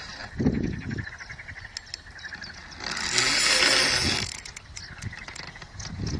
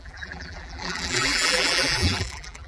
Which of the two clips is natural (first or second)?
first